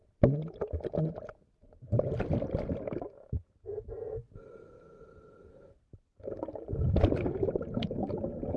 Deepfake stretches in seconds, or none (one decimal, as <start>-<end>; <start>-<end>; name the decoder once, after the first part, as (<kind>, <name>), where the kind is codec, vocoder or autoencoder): none